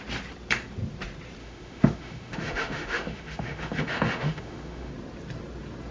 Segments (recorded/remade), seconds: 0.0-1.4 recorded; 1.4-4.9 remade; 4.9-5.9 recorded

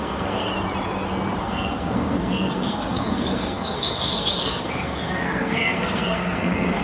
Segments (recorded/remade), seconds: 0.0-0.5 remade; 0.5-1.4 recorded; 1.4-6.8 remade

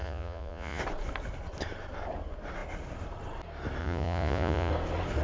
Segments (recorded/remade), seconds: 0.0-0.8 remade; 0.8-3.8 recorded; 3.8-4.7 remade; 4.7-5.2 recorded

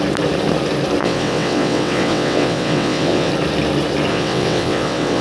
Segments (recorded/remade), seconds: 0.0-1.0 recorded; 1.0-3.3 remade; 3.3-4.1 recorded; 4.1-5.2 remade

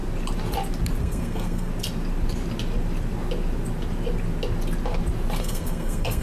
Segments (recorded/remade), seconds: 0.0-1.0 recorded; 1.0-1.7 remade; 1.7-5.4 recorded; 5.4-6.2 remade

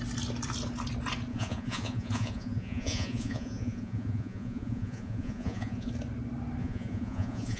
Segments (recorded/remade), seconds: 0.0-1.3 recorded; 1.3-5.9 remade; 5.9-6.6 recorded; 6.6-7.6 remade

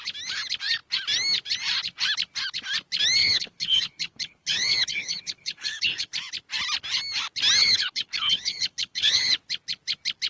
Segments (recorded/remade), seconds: 0.0-3.2 recorded; 3.2-6.1 remade; 6.1-7.6 recorded; 7.6-9.3 remade; 9.3-10.3 recorded